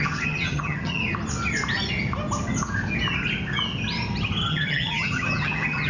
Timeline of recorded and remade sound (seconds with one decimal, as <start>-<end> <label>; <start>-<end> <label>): 0.0-1.0 remade; 1.0-4.5 recorded; 4.5-5.9 remade